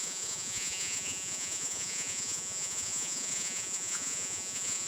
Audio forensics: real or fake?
fake